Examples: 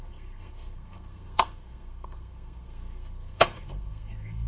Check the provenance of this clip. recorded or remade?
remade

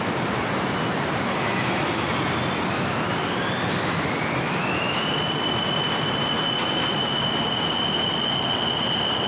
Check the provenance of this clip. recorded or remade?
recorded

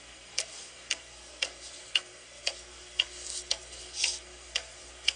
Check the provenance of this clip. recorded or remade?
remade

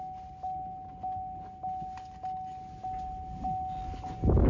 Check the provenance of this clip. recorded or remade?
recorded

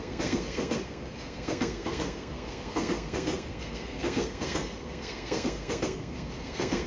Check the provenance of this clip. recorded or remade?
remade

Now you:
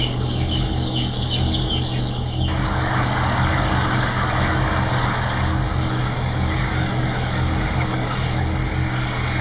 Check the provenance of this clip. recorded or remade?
remade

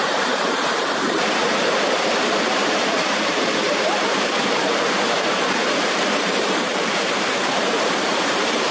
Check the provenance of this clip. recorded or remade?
remade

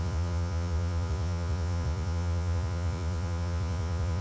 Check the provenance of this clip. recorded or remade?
remade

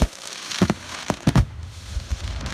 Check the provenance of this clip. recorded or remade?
remade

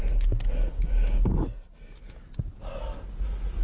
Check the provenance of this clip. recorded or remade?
recorded